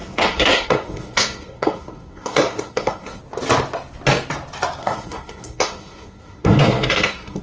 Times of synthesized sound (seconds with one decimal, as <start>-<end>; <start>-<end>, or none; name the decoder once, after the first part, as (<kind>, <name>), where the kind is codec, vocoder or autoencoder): 0.0-3.2 (codec, SNAC); 4.8-7.4